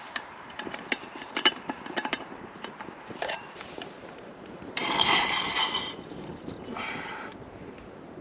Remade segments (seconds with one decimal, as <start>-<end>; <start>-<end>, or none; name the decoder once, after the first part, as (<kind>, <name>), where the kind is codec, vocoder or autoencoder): 0.0-8.2 (vocoder, BigVGAN v2)